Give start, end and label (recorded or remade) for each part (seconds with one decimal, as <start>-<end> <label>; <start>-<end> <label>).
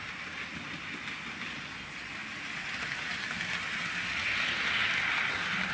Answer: 0.0-5.7 recorded